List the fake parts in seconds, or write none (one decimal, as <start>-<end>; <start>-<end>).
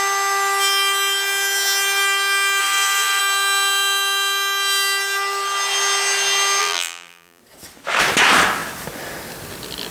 2.6-3.2; 6.6-7.4